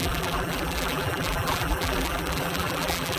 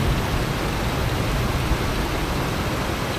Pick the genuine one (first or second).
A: second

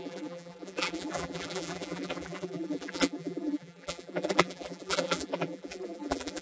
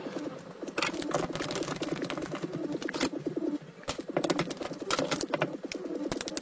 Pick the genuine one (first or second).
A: second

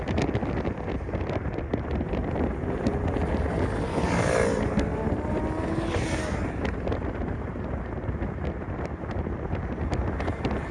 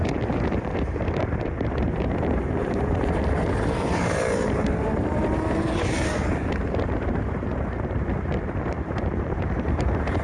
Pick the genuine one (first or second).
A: first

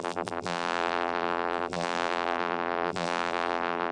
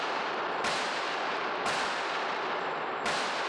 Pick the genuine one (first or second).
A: second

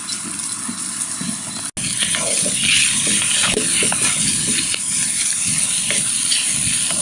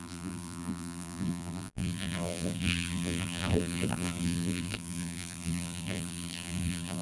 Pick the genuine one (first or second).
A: first